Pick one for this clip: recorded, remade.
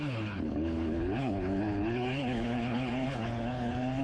remade